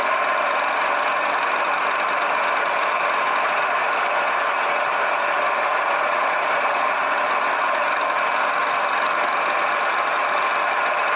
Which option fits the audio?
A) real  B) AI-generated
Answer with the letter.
A